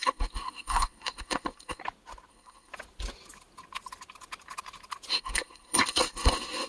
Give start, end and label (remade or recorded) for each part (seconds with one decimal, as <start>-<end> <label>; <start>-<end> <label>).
0.0-1.8 remade; 1.8-2.3 recorded; 2.3-2.7 remade; 2.7-5.1 recorded; 5.1-6.7 remade